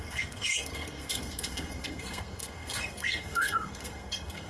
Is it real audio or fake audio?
fake